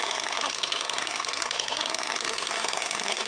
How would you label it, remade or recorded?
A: remade